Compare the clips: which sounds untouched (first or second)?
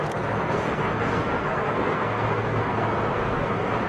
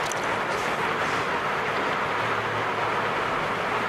second